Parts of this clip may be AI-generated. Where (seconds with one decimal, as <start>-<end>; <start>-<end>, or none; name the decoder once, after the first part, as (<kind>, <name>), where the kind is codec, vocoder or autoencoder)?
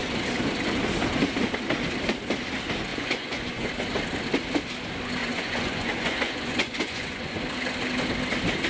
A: 2.9-3.7 (vocoder, Vocos); 5.2-7.4